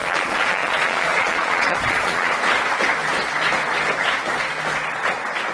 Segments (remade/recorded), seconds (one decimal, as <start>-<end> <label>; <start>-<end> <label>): 0.0-2.3 remade; 2.3-5.5 recorded